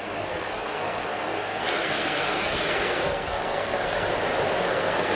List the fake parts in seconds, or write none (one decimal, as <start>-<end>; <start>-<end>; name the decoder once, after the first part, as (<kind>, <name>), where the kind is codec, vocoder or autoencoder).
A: 0.0-4.1 (codec, SNAC); 4.6-5.2